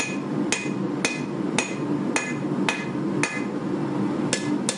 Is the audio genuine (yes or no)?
yes